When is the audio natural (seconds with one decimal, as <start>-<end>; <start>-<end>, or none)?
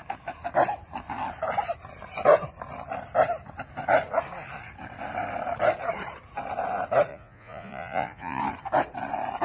0.0-7.1; 8.4-9.4